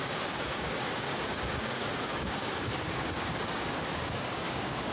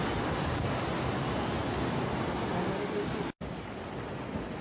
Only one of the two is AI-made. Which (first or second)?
first